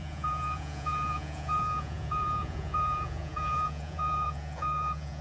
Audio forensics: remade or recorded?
remade